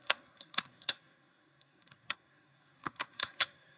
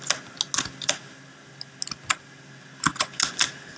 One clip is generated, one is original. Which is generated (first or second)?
first